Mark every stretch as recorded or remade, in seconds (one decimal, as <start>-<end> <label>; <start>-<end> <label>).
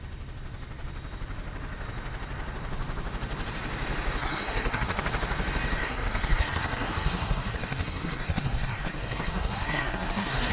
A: 0.0-4.2 recorded; 4.2-5.0 remade; 5.0-5.8 recorded; 5.8-10.5 remade